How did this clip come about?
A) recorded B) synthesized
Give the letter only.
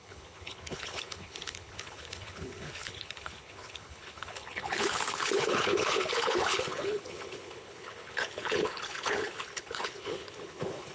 B